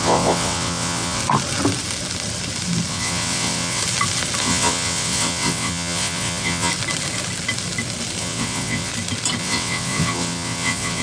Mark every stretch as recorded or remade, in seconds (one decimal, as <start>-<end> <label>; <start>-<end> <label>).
0.0-1.2 remade; 1.2-2.9 recorded; 2.9-3.8 remade; 3.8-4.4 recorded; 4.4-6.7 remade; 6.7-8.2 recorded; 8.2-8.9 remade; 8.9-9.4 recorded; 9.4-11.0 remade